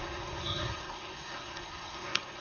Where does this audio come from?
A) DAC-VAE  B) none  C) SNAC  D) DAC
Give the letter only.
C